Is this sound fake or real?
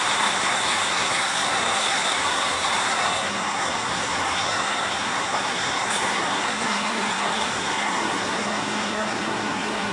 fake